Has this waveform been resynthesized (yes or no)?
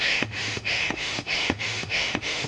yes